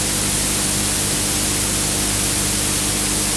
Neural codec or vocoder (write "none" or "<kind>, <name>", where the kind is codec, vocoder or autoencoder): none